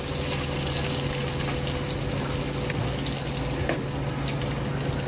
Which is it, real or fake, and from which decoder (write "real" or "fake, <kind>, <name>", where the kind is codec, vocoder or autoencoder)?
real